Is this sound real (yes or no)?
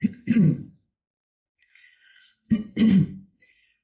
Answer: no